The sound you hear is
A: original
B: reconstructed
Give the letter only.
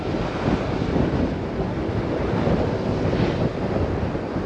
A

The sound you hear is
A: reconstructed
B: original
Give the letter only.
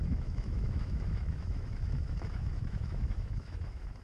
A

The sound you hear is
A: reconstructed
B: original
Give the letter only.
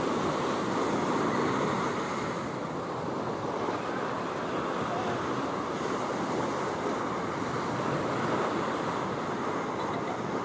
B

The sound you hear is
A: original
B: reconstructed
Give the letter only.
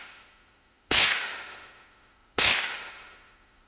B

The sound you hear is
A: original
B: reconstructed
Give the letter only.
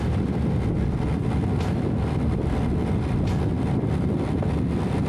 A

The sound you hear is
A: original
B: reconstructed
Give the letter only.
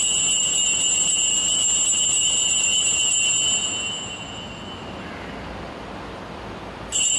A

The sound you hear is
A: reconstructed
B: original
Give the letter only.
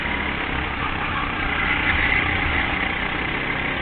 B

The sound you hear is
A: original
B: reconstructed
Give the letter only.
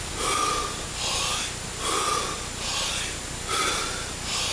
A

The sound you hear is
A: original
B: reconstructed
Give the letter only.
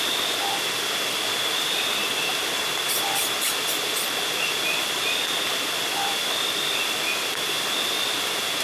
A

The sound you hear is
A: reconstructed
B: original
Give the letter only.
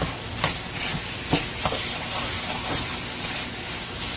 B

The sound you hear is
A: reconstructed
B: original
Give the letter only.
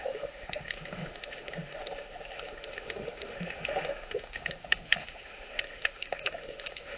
A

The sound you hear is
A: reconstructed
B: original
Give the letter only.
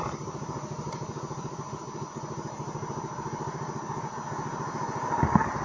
B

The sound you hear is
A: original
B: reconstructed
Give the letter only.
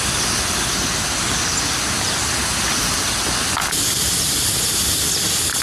A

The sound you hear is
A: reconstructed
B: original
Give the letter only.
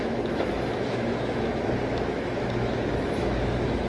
A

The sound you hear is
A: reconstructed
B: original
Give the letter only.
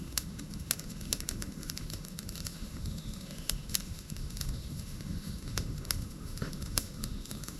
A